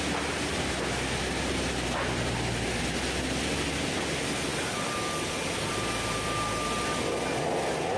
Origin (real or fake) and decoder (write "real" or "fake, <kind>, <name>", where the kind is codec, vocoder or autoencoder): real